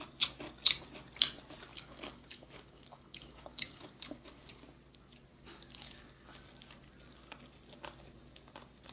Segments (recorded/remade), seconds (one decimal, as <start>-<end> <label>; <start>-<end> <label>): 0.0-1.7 recorded; 1.7-4.6 remade; 4.6-5.3 recorded; 5.3-6.5 remade; 6.5-8.9 recorded